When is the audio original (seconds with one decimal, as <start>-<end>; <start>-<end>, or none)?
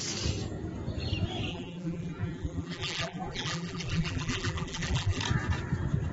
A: 0.0-1.5; 5.2-6.1